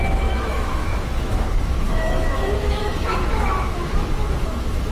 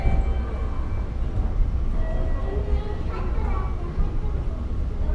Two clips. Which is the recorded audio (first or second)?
second